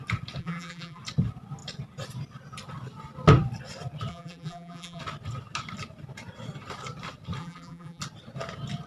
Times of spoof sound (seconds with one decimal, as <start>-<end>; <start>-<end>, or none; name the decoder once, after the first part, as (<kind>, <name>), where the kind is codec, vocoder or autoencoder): 0.4-1.0 (vocoder, BigVGAN v2); 4.1-5.0; 7.4-8.0